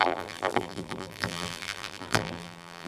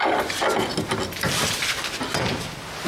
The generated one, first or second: first